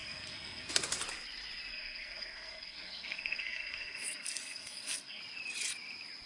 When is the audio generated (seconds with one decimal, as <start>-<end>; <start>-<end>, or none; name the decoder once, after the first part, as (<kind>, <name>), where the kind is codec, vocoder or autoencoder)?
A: 0.0-0.7 (codec, SNAC); 1.7-5.2

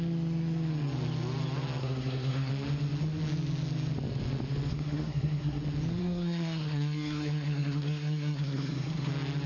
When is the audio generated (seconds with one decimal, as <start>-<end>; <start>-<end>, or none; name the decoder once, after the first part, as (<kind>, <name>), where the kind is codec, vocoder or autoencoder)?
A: 1.8-2.5 (codec, SNAC); 4.7-5.6; 6.0-9.1